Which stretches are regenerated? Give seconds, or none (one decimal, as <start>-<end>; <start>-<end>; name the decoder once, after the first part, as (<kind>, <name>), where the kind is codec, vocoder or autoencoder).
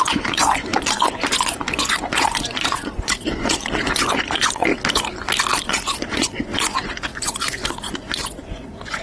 0.0-4.7 (vocoder, Vocos); 5.6-9.0